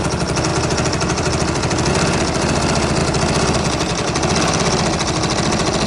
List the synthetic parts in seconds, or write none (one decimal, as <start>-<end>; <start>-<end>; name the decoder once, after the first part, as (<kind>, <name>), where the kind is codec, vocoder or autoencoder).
0.5-1.9 (vocoder, BigVGAN v2)